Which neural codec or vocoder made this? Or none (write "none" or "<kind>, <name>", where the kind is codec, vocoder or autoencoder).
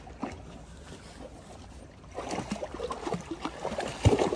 none